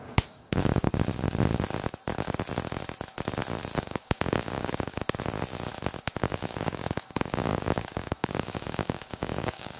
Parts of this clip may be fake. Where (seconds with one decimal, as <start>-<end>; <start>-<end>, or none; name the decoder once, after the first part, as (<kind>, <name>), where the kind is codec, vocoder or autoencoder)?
0.0-0.9 (codec, DAC); 3.8-5.0; 6.2-9.8